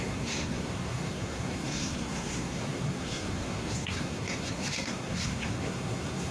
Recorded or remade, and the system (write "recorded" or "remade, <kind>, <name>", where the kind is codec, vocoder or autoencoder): remade, codec, SNAC